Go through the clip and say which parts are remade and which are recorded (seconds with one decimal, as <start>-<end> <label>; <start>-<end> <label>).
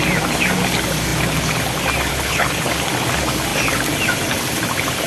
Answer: 0.0-2.1 recorded; 2.1-2.7 remade; 2.7-5.1 recorded